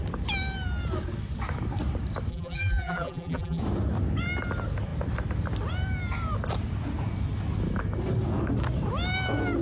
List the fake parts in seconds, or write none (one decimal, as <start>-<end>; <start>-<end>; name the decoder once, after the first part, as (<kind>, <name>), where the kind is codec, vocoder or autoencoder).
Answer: 2.3-3.6 (vocoder, BigVGAN v2)